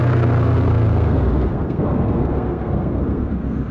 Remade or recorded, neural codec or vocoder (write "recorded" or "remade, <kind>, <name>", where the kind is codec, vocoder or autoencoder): remade, codec, SNAC